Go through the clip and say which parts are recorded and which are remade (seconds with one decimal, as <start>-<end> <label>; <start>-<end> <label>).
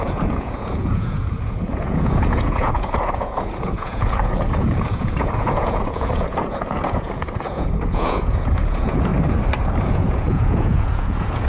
0.0-9.1 remade; 9.1-9.9 recorded; 9.9-11.5 remade